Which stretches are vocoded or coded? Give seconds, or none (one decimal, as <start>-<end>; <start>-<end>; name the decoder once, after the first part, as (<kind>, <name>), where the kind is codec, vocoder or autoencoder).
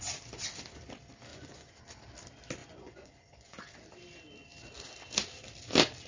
1.3-1.8 (vocoder, Vocos); 2.6-3.6